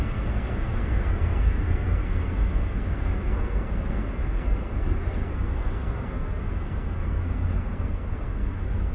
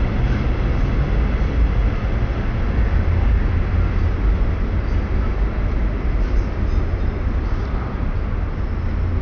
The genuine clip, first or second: second